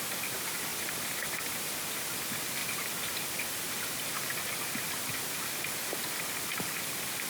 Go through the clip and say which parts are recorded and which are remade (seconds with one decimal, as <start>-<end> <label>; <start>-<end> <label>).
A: 0.0-7.3 recorded